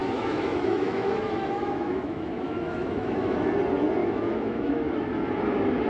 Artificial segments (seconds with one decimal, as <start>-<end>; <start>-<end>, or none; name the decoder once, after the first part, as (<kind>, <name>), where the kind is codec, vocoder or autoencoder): 0.0-3.5 (autoencoder, DAC-VAE); 4.0-5.0